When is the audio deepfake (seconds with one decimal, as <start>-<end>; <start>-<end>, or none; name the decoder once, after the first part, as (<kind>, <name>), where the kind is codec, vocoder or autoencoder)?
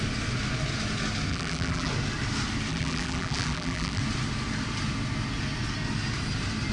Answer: 1.3-1.9 (vocoder, BigVGAN v2); 2.7-4.0